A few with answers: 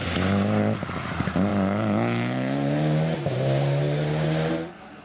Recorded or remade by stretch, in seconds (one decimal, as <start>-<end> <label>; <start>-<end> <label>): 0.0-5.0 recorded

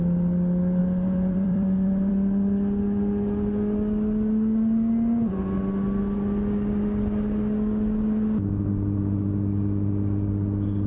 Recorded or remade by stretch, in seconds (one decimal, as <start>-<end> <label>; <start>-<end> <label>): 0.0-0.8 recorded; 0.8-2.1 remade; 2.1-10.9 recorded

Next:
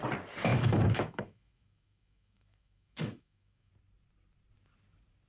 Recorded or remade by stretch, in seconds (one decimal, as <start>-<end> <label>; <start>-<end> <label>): 0.0-0.5 recorded; 0.5-3.7 remade; 3.7-5.3 recorded